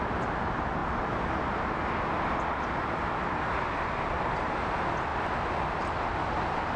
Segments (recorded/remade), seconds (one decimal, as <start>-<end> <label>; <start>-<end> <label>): 0.0-6.8 recorded